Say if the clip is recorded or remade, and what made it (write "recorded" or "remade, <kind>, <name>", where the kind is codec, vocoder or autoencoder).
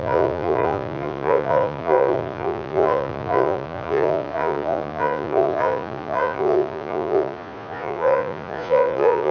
remade, vocoder, Vocos